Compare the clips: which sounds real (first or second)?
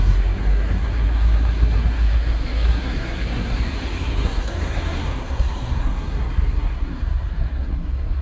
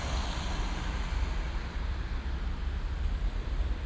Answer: second